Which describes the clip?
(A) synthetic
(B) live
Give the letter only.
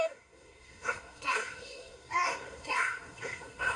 A